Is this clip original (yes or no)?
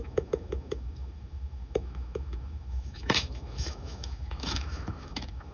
no